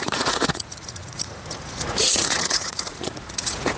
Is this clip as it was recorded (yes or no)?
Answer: no